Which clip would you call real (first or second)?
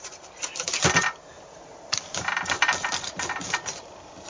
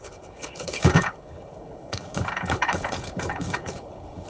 first